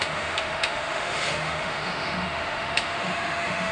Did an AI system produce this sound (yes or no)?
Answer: yes